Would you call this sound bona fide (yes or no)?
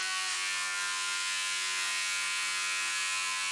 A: no